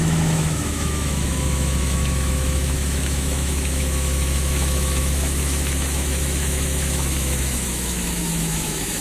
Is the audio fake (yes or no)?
yes